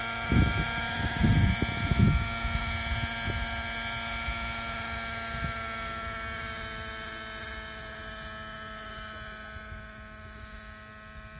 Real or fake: real